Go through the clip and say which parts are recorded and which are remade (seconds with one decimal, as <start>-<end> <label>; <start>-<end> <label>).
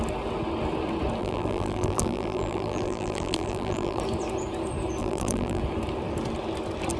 0.0-1.2 recorded; 1.2-4.0 remade; 4.0-5.0 recorded; 5.0-5.6 remade; 5.6-7.0 recorded